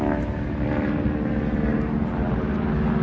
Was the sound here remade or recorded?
recorded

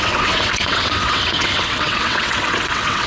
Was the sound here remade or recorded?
remade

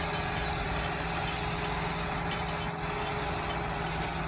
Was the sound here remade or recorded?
recorded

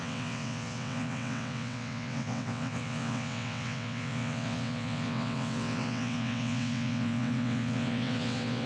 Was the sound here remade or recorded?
remade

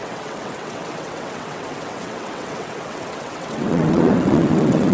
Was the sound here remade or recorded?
remade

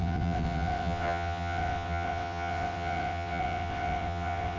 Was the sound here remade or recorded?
remade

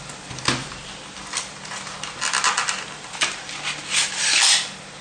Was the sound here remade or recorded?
recorded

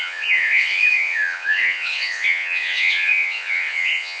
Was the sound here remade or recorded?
remade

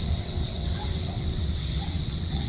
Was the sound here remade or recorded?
remade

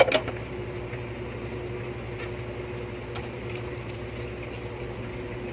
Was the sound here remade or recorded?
recorded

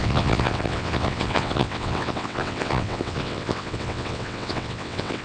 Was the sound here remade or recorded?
remade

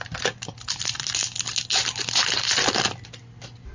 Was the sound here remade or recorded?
recorded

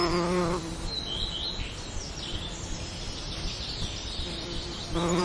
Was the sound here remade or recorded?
recorded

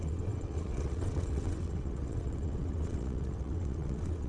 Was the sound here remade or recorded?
remade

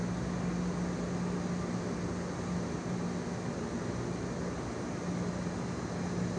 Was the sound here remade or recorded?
recorded